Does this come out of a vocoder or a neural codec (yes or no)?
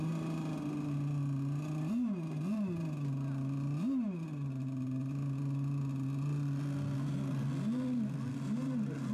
no